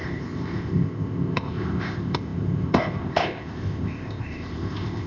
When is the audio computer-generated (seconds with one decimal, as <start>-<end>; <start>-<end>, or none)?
0.0-5.1